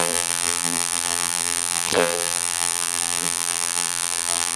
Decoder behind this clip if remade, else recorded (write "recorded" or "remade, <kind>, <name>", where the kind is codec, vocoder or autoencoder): remade, vocoder, BigVGAN v2